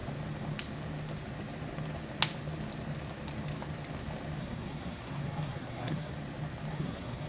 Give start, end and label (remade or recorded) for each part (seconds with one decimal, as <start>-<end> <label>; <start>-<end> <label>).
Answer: 0.0-4.4 recorded; 4.4-6.1 remade; 6.1-6.7 recorded; 6.7-7.3 remade